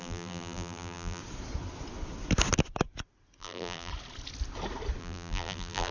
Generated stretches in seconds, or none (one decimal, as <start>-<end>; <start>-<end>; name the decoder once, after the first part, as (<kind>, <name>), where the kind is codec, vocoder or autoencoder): 0.0-1.2 (vocoder, BigVGAN v2); 3.4-3.9; 5.0-5.9